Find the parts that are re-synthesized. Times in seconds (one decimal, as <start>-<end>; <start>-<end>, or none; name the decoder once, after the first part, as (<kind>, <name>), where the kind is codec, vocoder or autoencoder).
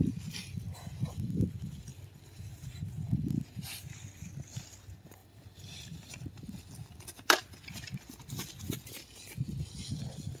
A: 1.9-3.1 (vocoder, BigVGAN v2); 5.2-8.9